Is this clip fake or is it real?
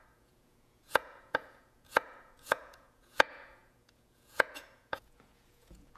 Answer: fake